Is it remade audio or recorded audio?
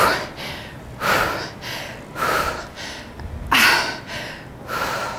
recorded